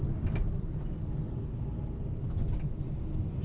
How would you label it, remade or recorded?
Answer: recorded